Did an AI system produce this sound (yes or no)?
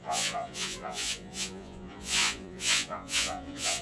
yes